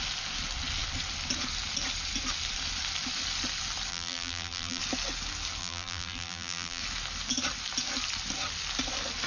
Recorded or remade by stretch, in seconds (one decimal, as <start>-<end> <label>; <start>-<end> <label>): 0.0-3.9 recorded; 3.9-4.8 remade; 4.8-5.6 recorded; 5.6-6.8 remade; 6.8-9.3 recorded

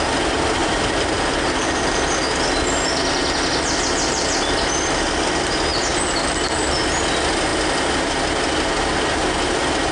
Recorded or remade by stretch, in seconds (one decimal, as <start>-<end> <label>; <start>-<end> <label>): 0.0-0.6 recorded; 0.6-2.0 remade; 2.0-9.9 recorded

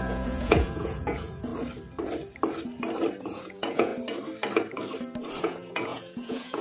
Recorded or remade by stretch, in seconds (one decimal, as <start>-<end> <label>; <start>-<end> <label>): 0.0-1.5 remade; 1.5-3.2 recorded; 3.2-3.9 remade; 3.9-5.4 recorded; 5.4-6.6 remade

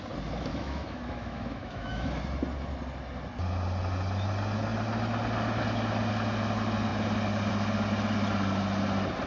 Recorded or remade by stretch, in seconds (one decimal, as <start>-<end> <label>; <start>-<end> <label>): 0.0-0.5 recorded; 0.5-2.2 remade; 2.2-9.3 recorded

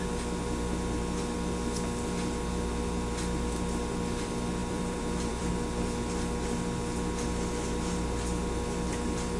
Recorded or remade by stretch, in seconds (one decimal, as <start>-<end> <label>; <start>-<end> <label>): 0.0-4.6 recorded; 4.6-5.5 remade; 5.5-9.4 recorded

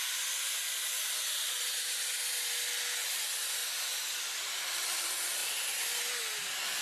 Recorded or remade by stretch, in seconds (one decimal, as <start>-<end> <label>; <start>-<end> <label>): 0.0-6.8 recorded